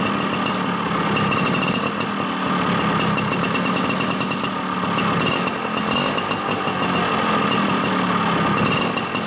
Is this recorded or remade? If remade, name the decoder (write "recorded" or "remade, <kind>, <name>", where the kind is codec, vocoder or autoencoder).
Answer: recorded